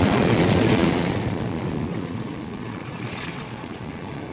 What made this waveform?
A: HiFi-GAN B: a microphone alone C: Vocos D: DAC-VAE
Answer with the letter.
C